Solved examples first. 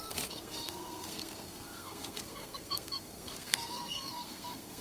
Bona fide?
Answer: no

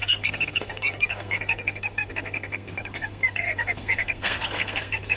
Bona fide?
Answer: no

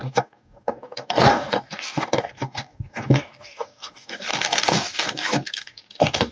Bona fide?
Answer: no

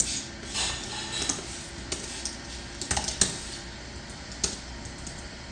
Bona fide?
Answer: yes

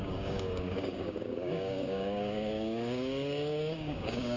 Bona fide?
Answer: no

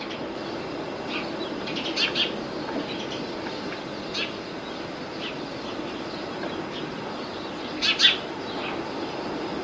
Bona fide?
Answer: yes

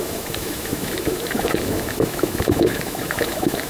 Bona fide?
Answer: no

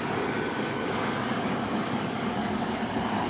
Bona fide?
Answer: no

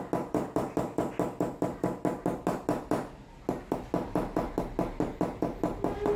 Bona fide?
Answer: yes